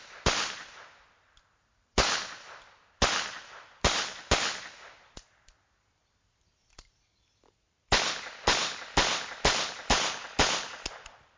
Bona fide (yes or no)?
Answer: yes